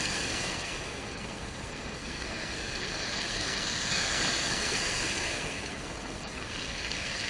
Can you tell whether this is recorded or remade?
remade